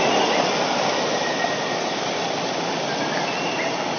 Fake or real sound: real